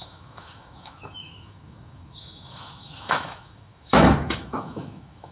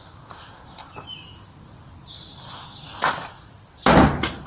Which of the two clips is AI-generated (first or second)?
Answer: first